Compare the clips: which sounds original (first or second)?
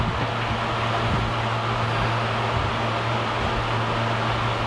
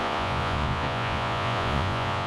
first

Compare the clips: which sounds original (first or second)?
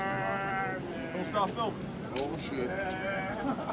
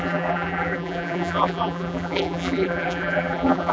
first